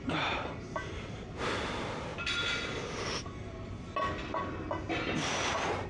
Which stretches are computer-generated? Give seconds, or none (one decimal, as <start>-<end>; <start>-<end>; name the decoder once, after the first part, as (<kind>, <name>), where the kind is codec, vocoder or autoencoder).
0.0-2.1 (vocoder, BigVGAN v2)